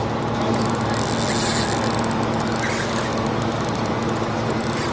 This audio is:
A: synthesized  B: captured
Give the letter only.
B